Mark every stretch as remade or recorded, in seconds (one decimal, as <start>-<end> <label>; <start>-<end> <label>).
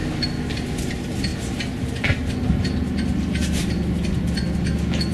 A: 0.0-5.1 recorded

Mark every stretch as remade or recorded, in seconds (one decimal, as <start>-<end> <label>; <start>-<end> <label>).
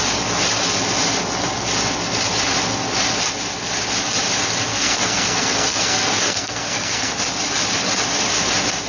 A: 0.0-4.7 recorded; 4.7-7.1 remade; 7.1-8.9 recorded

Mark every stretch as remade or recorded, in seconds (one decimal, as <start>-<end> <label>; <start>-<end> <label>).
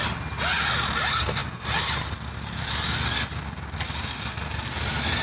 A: 0.0-5.2 recorded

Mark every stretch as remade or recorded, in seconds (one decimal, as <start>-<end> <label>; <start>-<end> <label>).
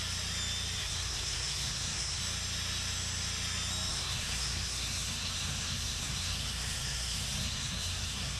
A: 0.0-0.8 recorded; 0.8-2.2 remade; 2.2-3.9 recorded; 3.9-8.4 remade